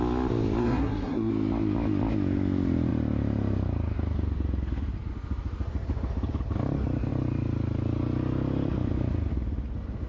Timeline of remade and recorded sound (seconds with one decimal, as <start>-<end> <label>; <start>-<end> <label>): 0.0-0.6 recorded; 0.6-1.3 remade; 1.3-10.1 recorded